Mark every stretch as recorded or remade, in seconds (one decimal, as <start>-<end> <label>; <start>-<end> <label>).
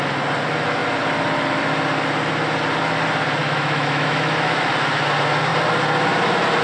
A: 0.0-3.4 recorded; 3.4-4.7 remade; 4.7-6.6 recorded